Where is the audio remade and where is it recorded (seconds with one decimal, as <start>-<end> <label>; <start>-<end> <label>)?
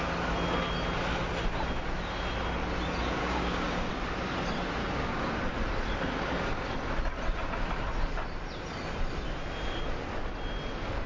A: 0.0-3.2 recorded; 3.2-3.9 remade; 3.9-4.8 recorded; 4.8-5.4 remade; 5.4-11.1 recorded